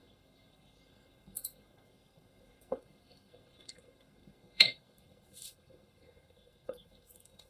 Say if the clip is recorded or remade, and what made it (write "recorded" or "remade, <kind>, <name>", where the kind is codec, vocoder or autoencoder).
remade, codec, SNAC